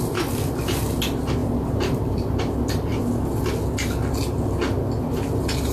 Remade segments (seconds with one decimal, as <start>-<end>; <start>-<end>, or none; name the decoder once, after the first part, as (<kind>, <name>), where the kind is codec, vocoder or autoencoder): 1.4-2.4 (vocoder, BigVGAN v2)